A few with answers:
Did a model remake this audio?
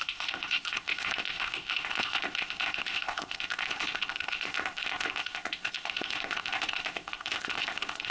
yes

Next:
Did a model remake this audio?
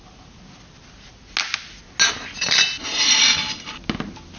no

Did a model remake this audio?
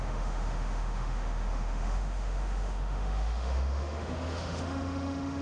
yes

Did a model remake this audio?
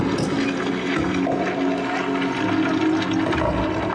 no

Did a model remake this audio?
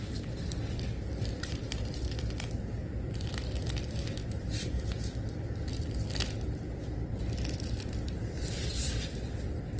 yes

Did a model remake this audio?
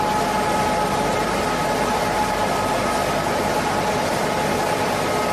no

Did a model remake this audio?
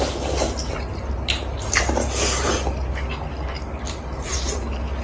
no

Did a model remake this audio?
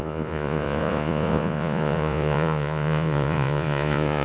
yes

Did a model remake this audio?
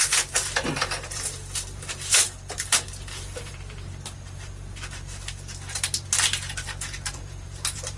yes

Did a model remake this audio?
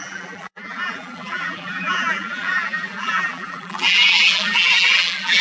yes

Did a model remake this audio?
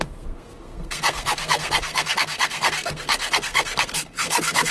yes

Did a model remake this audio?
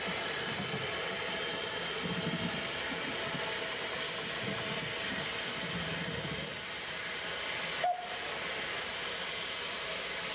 no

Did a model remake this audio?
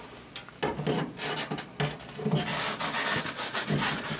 no